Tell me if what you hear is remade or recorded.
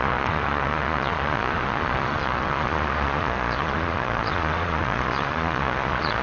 remade